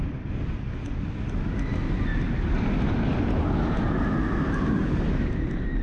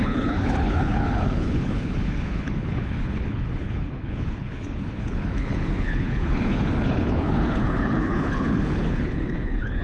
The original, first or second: first